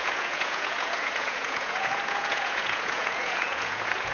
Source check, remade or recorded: remade